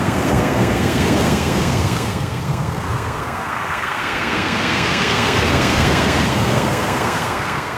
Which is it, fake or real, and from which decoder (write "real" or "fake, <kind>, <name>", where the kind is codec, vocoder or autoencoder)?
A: fake, codec, SNAC